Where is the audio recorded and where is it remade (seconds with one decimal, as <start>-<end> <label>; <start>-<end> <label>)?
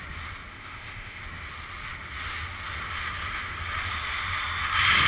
0.0-0.5 recorded; 0.5-1.2 remade; 1.2-5.1 recorded